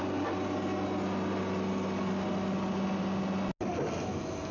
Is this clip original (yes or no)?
yes